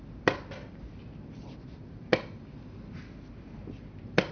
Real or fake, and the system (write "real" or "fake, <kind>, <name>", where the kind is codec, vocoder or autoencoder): real